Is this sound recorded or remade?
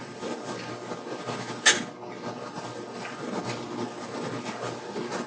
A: recorded